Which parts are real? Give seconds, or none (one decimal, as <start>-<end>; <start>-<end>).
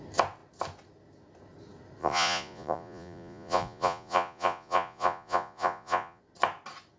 0.0-2.0; 6.2-7.0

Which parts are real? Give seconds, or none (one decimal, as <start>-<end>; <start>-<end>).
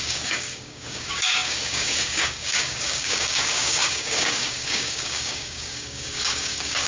none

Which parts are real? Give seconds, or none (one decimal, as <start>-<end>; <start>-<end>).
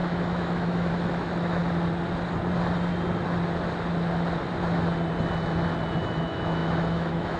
1.6-6.0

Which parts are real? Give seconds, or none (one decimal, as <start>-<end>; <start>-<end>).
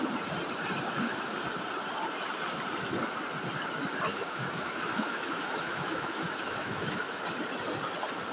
0.0-4.1; 7.2-8.3